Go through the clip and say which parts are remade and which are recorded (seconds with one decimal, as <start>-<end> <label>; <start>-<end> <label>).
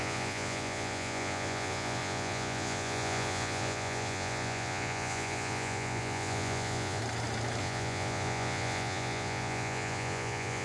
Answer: 0.0-7.0 remade; 7.0-7.6 recorded; 7.6-10.6 remade